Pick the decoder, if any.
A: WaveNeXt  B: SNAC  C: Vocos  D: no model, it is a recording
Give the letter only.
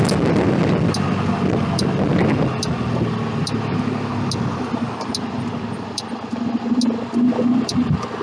D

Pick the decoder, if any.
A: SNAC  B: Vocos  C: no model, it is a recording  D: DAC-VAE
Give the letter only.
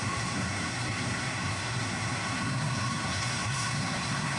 A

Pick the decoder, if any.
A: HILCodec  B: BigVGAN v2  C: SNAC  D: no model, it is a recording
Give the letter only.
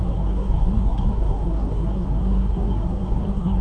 C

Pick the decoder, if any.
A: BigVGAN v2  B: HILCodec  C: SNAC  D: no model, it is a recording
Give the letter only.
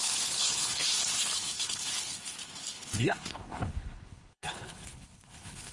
B